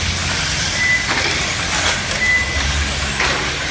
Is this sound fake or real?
real